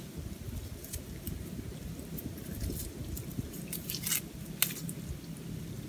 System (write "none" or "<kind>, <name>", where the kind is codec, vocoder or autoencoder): none